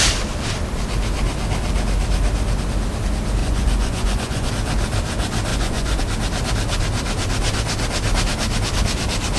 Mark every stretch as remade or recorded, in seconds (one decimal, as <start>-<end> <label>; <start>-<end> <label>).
0.0-3.4 recorded; 3.4-4.5 remade; 4.5-5.5 recorded; 5.5-6.0 remade; 6.0-9.4 recorded

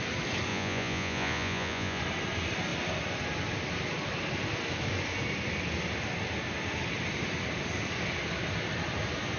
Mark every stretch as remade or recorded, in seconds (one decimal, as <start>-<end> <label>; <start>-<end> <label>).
0.0-0.5 recorded; 0.5-2.0 remade; 2.0-9.4 recorded

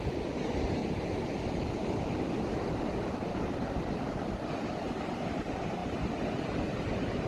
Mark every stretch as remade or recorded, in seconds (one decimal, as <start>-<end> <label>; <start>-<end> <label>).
0.0-0.8 recorded; 0.8-2.0 remade; 2.0-3.3 recorded; 3.3-3.9 remade; 3.9-7.3 recorded

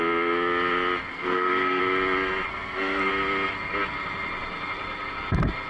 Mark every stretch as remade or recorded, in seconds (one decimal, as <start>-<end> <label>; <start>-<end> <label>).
0.0-1.1 recorded; 1.1-1.8 remade; 1.8-2.5 recorded; 2.5-3.1 remade; 3.1-5.7 recorded

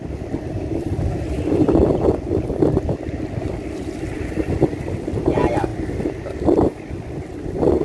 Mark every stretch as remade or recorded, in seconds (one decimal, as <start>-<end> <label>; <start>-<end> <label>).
0.0-7.8 recorded

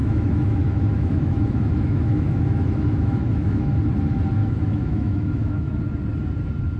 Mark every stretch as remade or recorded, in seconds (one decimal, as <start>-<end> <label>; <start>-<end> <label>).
0.0-3.8 remade; 3.8-4.4 recorded; 4.4-5.8 remade; 5.8-6.8 recorded

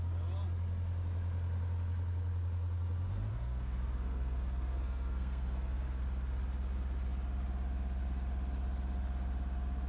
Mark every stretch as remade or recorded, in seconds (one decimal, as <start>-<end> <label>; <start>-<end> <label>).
0.0-3.3 recorded; 3.3-6.0 remade; 6.0-9.9 recorded

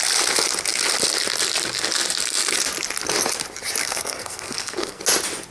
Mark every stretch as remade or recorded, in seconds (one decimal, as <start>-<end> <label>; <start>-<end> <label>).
0.0-3.8 recorded; 3.8-5.0 remade; 5.0-5.5 recorded